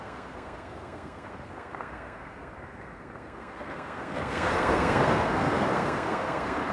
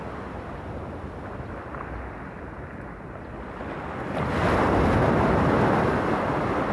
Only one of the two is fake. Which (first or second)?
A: first